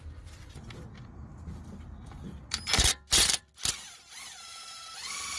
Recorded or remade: recorded